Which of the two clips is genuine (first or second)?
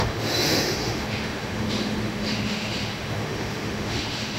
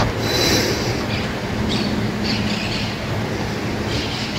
second